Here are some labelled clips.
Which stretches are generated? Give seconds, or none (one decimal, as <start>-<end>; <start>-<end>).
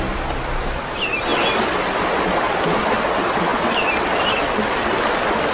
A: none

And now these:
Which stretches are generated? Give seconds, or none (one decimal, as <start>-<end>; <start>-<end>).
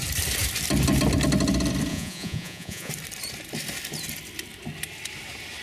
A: 1.9-2.9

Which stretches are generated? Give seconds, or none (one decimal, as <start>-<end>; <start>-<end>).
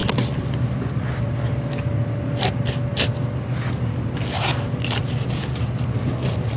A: none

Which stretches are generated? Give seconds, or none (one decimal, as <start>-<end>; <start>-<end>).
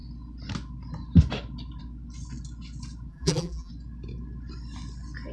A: 3.1-3.7